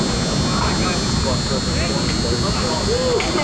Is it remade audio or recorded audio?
recorded